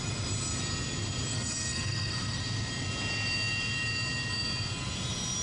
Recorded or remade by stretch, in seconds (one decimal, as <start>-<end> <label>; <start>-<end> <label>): 0.0-1.3 recorded; 1.3-2.4 remade; 2.4-5.4 recorded